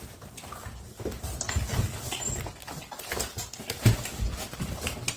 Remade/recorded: recorded